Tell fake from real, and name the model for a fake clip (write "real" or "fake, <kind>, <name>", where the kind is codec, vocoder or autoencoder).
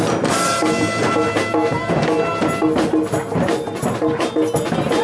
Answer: real